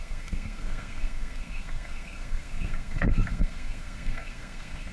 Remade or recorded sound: remade